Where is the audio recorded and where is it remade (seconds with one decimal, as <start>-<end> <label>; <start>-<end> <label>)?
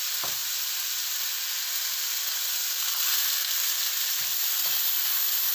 0.0-5.5 remade